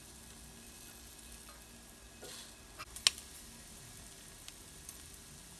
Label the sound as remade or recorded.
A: recorded